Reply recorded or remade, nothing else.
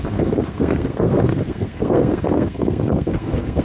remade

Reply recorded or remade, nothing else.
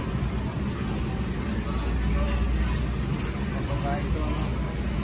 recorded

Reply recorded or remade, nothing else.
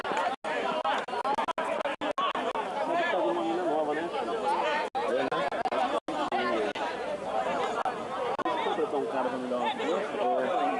recorded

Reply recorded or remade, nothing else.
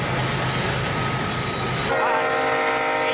recorded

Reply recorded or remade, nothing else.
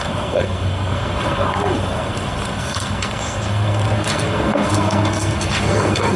remade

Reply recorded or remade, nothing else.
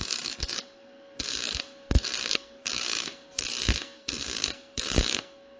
remade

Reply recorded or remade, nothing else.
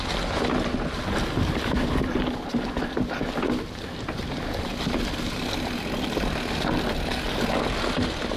recorded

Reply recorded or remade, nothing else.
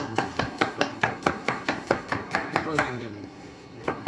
remade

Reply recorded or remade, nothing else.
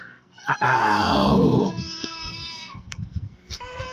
remade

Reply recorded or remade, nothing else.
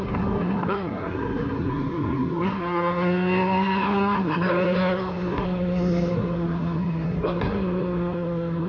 remade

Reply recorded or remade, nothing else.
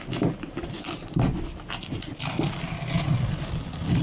recorded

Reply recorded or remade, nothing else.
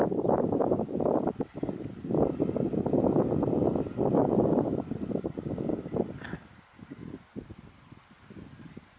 recorded